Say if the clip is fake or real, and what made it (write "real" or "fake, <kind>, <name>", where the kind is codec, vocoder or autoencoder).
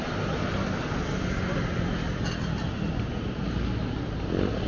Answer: real